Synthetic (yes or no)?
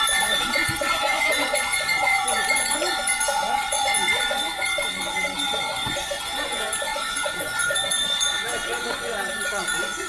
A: yes